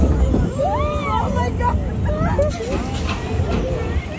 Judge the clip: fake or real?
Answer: real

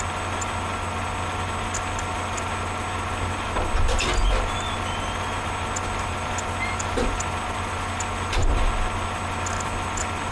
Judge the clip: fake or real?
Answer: real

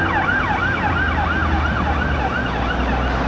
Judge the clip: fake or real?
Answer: real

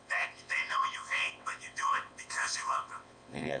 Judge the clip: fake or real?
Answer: fake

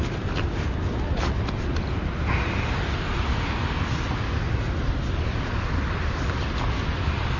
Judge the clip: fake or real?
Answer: real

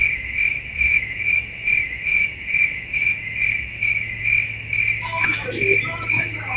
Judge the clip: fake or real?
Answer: fake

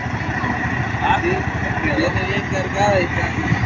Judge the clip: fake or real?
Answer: real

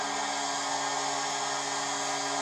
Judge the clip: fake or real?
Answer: real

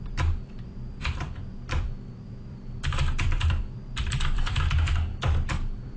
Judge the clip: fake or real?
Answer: fake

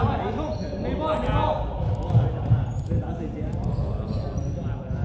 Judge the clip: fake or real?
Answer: real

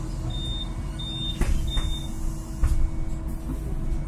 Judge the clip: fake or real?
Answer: real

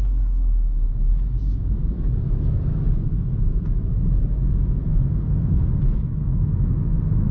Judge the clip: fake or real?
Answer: fake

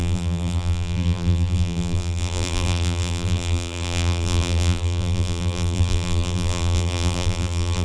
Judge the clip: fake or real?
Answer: fake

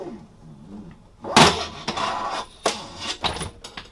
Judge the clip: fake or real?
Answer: real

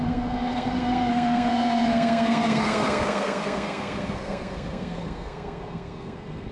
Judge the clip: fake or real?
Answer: fake